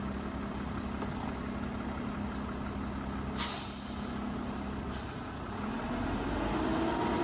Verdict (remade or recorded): recorded